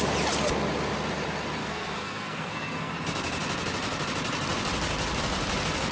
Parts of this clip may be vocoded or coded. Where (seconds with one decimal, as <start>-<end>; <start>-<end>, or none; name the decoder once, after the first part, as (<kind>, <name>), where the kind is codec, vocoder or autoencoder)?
1.6-2.9 (codec, SNAC)